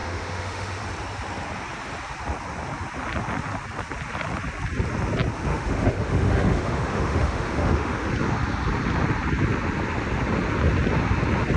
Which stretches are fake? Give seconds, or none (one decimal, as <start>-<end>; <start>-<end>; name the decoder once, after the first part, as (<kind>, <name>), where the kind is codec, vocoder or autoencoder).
0.0-0.8 (autoencoder, DAC-VAE); 5.5-8.1